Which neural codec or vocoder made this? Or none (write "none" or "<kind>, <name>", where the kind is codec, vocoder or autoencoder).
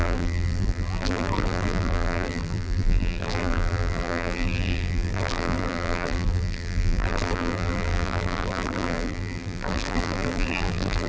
vocoder, BigVGAN v2